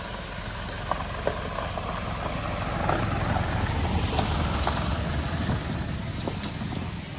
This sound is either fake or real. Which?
real